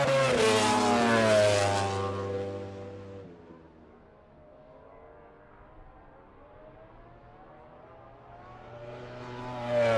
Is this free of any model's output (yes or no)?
yes